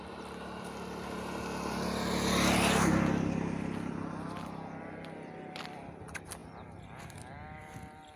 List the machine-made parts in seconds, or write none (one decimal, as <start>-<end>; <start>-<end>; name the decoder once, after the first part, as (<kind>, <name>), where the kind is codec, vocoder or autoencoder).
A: none